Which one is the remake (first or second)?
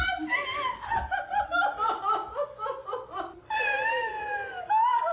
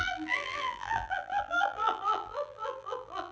second